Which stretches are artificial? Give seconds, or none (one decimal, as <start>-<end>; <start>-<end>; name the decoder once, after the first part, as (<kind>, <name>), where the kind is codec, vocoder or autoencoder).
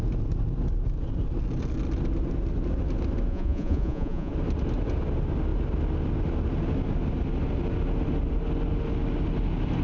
3.3-4.3 (vocoder, Vocos)